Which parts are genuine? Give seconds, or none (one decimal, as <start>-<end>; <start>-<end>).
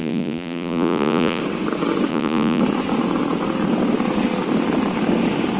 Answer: 1.4-2.1; 2.6-5.6